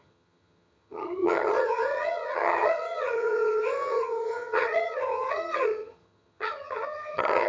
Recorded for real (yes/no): no